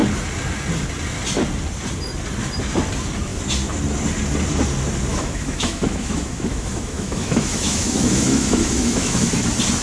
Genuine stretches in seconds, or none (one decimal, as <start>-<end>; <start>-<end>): 0.0-5.1; 9.3-9.8

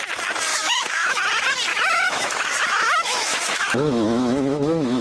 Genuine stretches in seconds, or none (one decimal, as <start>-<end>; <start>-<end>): 0.0-0.5; 1.2-1.7

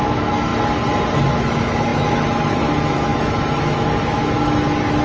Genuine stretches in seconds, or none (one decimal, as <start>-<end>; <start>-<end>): 0.5-1.3

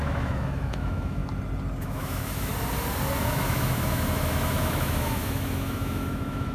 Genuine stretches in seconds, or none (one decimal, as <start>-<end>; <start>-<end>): 1.2-1.8; 2.5-3.2